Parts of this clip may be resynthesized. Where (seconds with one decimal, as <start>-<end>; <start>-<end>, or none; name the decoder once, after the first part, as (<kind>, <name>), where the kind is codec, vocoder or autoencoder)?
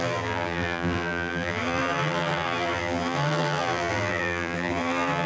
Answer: 0.0-5.3 (vocoder, BigVGAN v2)